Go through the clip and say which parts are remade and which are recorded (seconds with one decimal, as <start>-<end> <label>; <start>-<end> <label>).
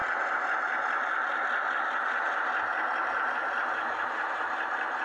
0.0-3.0 recorded; 3.0-5.0 remade